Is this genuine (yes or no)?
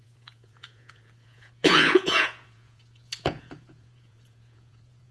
no